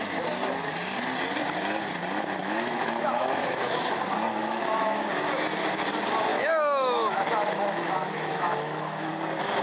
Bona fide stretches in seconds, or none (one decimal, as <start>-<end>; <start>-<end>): 0.0-2.4; 4.0-4.4; 5.1-6.3; 9.1-9.6